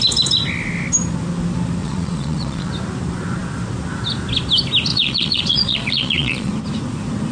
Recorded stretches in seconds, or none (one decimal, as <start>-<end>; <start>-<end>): 0.0-1.8; 2.7-4.9; 6.5-7.3